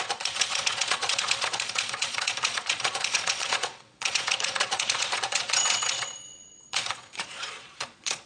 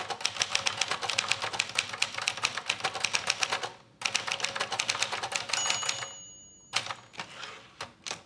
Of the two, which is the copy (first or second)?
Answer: first